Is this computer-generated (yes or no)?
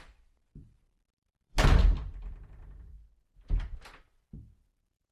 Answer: yes